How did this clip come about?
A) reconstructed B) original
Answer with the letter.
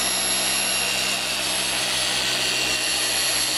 B